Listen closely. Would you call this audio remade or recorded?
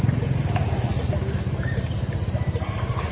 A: recorded